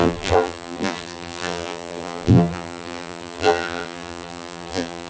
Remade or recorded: remade